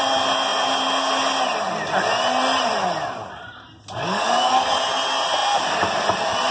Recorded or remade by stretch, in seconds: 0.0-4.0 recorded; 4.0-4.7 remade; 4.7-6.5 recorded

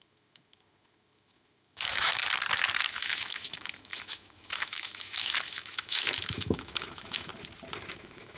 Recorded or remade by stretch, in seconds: 0.0-2.2 remade; 2.2-2.9 recorded; 2.9-7.3 remade; 7.3-7.9 recorded; 7.9-8.4 remade